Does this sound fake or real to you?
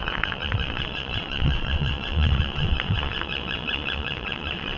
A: fake